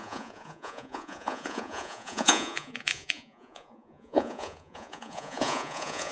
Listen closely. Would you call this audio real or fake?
fake